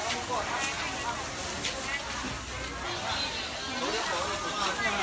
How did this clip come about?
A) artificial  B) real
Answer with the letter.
B